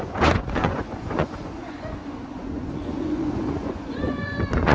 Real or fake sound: fake